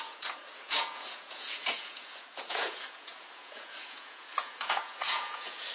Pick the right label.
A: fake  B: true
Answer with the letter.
A